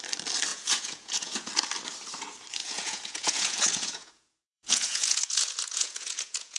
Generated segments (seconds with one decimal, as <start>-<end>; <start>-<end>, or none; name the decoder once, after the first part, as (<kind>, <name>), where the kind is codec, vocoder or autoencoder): 0.5-1.5 (vocoder, Vocos); 2.6-6.6